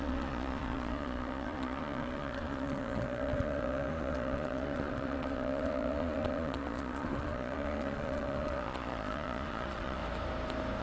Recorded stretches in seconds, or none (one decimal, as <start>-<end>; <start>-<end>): 10.0-10.8